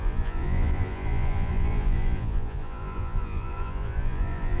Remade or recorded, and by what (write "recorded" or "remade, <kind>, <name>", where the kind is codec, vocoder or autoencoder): remade, vocoder, Vocos